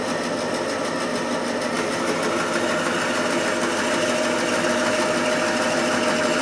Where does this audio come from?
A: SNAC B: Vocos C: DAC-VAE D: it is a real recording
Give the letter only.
D